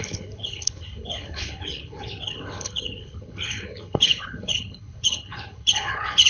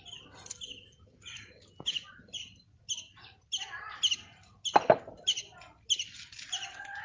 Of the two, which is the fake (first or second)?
first